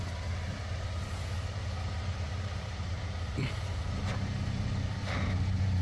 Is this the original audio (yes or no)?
no